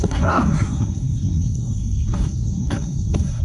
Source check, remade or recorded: remade